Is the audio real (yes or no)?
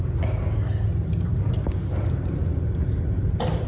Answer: yes